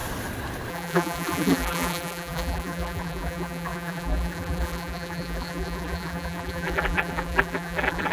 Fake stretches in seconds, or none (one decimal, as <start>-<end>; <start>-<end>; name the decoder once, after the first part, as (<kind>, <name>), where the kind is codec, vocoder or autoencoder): 0.7-8.1 (vocoder, BigVGAN v2)